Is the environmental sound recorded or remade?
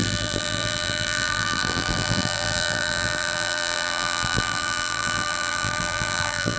remade